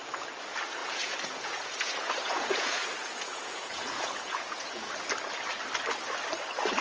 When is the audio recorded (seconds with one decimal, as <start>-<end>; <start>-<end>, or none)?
0.0-0.8; 4.9-6.8